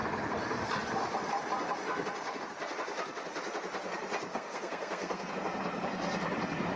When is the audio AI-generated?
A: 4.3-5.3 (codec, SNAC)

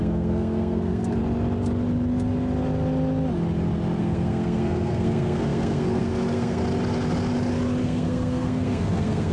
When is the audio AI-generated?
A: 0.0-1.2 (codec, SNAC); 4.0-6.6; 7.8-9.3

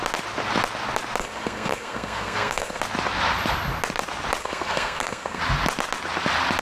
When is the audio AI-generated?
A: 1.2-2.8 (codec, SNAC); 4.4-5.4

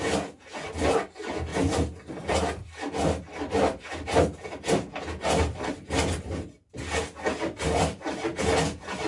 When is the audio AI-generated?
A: none